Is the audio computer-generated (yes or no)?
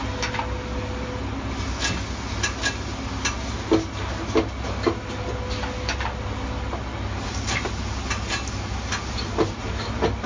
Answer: no